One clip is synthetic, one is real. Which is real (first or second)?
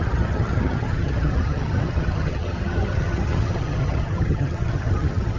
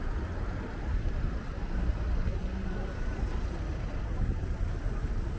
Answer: second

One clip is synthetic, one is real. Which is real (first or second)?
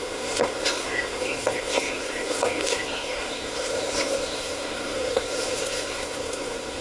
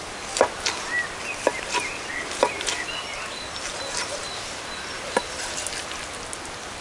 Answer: second